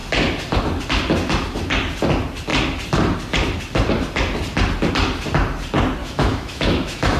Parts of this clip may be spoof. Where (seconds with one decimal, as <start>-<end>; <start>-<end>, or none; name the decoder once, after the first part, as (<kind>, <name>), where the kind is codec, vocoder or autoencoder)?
6.0-7.2 (autoencoder, DAC-VAE)